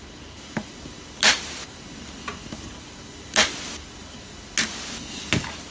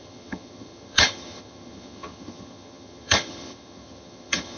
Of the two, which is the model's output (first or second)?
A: second